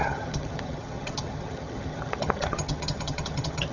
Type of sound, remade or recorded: remade